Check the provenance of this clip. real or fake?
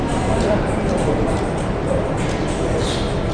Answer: real